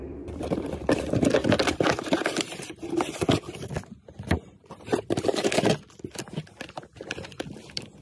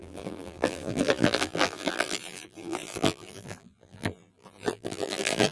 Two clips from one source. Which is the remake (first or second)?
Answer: second